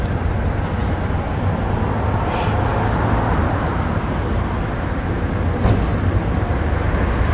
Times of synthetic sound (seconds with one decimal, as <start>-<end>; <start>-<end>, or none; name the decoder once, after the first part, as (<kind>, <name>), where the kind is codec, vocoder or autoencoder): 0.8-1.5 (vocoder, BigVGAN v2)